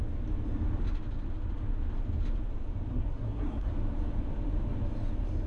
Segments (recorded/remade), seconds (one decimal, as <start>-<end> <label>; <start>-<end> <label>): 0.0-2.9 recorded; 2.9-3.7 remade; 3.7-5.5 recorded